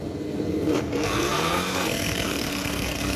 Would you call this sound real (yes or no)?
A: no